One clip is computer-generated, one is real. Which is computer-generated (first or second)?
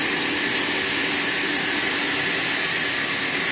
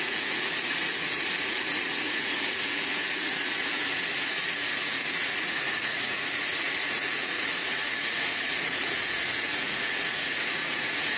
second